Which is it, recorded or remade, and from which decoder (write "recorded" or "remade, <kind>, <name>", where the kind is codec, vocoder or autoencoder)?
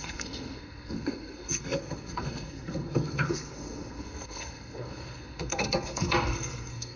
remade, codec, SNAC